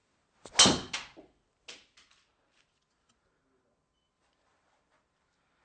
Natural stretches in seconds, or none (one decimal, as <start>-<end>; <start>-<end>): 0.0-5.6